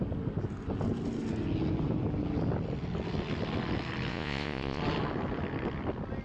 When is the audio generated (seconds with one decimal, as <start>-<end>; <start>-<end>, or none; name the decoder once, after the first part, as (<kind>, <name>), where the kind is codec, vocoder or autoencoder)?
4.1-4.8 (vocoder, Vocos)